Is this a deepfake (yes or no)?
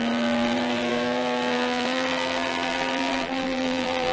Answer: yes